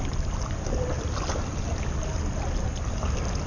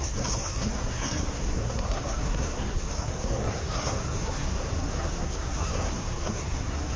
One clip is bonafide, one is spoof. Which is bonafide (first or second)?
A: first